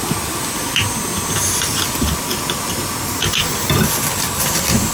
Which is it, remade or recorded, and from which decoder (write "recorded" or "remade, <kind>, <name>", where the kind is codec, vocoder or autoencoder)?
recorded